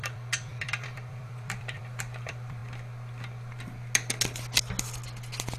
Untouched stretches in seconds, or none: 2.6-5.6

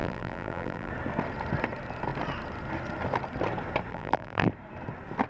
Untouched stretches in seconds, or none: 0.9-3.9; 4.5-5.3

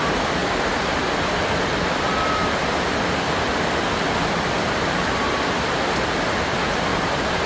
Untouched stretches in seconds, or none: 0.0-4.6; 5.3-6.9

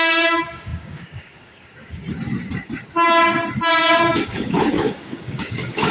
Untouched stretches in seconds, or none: 2.0-4.0

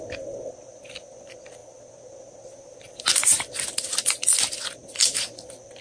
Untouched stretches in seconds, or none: 0.0-5.8